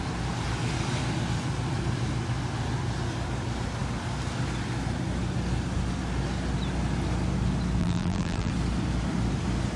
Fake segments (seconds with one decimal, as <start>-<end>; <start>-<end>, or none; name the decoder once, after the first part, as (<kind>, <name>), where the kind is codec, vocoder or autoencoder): 7.8-8.5 (vocoder, BigVGAN v2)